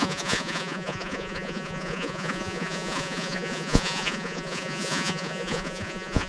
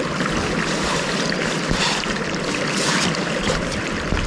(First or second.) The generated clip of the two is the first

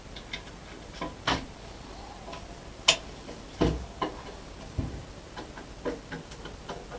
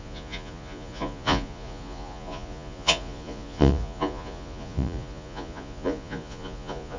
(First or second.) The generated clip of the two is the second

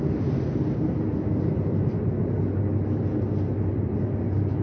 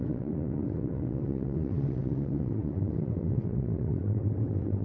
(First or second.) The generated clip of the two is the second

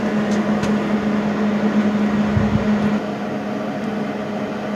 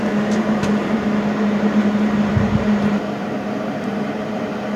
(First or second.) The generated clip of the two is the second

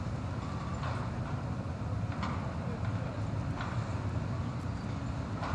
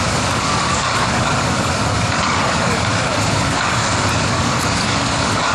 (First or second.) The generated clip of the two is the second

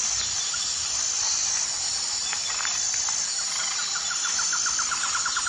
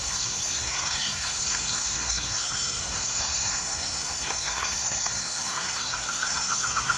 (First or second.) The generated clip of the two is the second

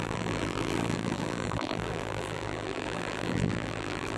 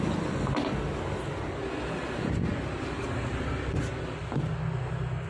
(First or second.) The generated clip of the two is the first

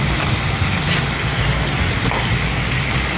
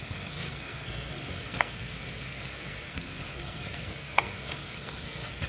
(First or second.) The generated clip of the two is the second